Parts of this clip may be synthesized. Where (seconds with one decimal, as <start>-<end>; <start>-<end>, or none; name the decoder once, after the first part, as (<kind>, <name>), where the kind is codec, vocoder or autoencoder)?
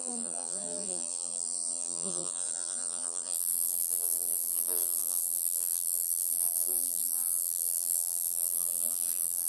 0.0-9.5 (vocoder, BigVGAN v2)